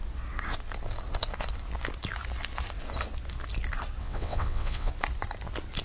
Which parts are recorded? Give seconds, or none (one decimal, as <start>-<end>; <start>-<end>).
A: 0.0-4.0; 4.9-5.8